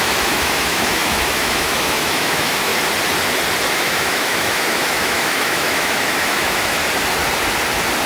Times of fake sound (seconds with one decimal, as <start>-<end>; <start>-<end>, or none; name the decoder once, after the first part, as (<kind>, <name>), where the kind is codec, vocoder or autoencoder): 0.0-2.7 (autoencoder, DAC-VAE); 3.7-6.8

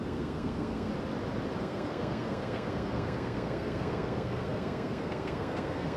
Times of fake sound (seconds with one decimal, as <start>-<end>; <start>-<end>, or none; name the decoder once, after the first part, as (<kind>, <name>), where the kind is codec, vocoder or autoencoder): 0.0-0.9 (codec, SNAC); 1.6-6.0

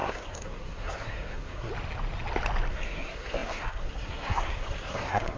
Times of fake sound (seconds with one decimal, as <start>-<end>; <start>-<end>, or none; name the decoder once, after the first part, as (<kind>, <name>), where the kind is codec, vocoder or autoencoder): 0.0-1.7 (codec, SNAC); 2.7-5.4

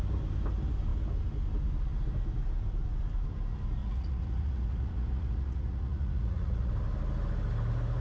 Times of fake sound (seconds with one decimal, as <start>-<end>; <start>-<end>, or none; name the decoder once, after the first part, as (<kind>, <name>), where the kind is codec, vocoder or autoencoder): 3.8-6.7 (vocoder, Vocos)

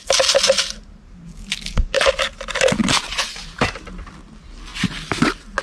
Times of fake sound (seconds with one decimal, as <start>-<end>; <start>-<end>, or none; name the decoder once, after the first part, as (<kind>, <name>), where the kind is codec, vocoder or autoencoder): 1.3-2.1 (codec, DAC)

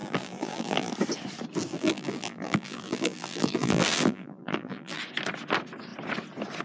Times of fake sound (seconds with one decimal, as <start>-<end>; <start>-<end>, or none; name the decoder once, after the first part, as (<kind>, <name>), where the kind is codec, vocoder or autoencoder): 0.0-0.9 (vocoder, BigVGAN v2); 1.7-5.0

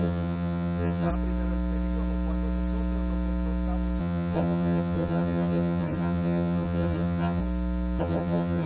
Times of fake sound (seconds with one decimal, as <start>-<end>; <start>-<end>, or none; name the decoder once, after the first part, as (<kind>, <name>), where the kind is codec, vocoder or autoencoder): 0.0-1.1 (vocoder, HiFi-GAN); 4.0-7.4; 8.0-8.7